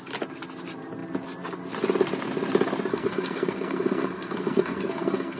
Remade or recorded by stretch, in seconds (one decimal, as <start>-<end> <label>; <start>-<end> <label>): 0.0-2.9 recorded; 2.9-5.4 remade